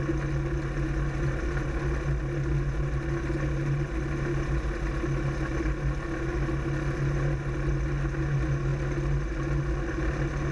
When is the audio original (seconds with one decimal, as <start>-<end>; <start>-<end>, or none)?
0.0-10.5